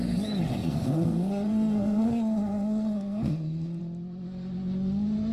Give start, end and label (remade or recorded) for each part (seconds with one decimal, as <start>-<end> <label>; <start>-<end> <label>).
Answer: 0.0-0.6 recorded; 0.6-3.8 remade; 3.8-5.3 recorded